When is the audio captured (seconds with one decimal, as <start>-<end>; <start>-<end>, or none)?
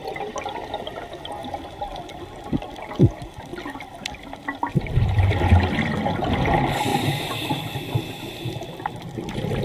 0.0-9.6